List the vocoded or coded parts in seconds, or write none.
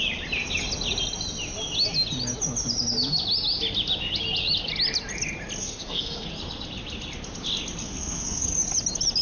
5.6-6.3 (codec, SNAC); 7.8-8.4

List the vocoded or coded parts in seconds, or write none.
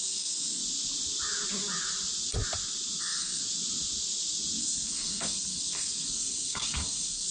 0.0-0.6 (codec, SNAC); 3.0-3.4; 4.6-7.3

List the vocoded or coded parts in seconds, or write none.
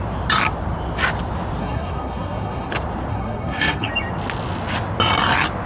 1.6-2.7 (codec, SNAC); 3.1-3.9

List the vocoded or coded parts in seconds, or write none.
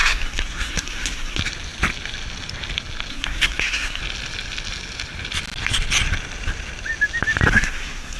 0.0-1.4 (codec, SNAC); 3.1-4.0; 7.5-8.2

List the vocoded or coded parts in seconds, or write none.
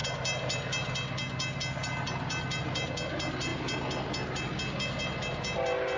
none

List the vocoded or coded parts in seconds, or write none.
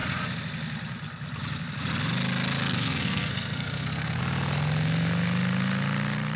2.6-4.2 (codec, SNAC)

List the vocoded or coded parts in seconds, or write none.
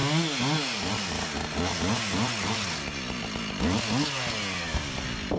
none